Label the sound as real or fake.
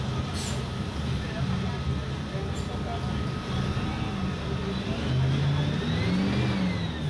real